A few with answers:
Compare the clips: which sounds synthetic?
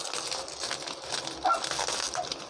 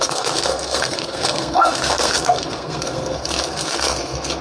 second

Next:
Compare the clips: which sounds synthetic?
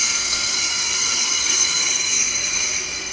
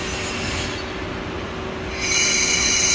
first